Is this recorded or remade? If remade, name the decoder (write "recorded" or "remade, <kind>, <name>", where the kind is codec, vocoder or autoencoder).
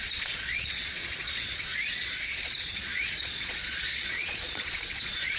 remade, vocoder, Vocos